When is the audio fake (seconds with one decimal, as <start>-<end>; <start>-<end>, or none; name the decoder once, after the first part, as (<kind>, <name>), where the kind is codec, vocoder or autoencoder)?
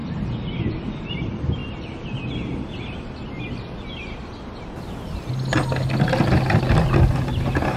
none